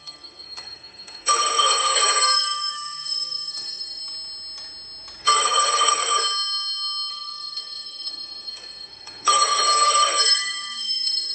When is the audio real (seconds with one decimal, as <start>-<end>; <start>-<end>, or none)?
4.0-5.2; 6.2-7.1